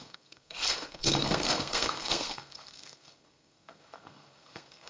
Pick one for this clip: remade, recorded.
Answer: remade